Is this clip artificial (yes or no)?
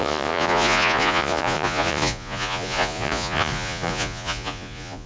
yes